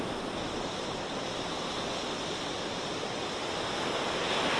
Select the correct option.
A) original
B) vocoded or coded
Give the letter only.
B